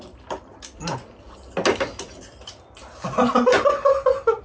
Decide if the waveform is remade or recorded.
recorded